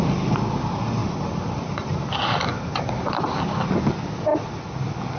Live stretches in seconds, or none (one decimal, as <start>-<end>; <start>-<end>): 0.0-1.0; 3.2-5.2